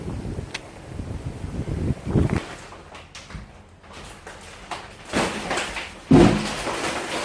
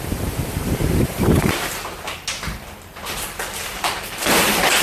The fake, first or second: second